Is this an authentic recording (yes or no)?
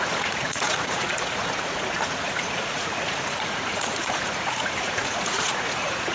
no